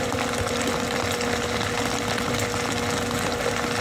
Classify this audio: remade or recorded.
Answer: recorded